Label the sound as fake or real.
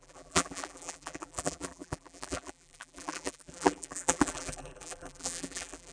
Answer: fake